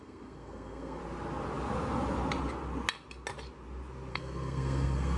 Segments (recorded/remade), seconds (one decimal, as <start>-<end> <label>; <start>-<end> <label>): 0.0-1.0 remade; 1.0-4.1 recorded; 4.1-5.2 remade